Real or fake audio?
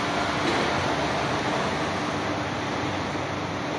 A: real